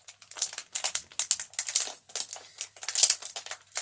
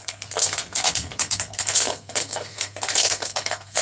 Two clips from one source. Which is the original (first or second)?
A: first